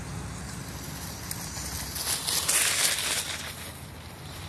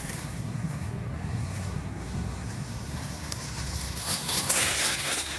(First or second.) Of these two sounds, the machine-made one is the second